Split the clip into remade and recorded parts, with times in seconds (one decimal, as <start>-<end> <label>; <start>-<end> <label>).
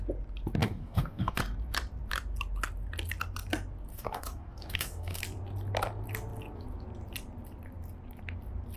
0.0-0.6 recorded; 0.6-1.4 remade; 1.4-3.9 recorded; 3.9-5.2 remade; 5.2-8.8 recorded